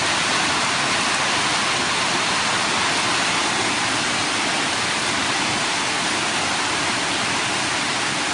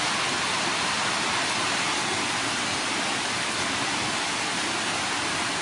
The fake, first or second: first